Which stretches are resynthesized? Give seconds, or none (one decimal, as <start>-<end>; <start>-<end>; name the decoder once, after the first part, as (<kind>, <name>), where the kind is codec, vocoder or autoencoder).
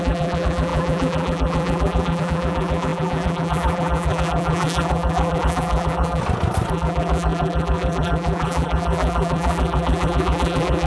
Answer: 0.0-6.2 (vocoder, BigVGAN v2); 6.7-10.9